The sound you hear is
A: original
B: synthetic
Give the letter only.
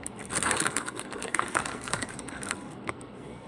B